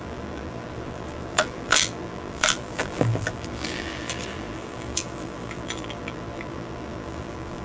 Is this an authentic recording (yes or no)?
no